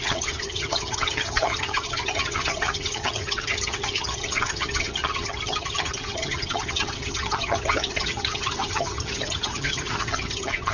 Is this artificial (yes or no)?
yes